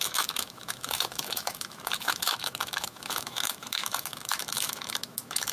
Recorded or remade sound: remade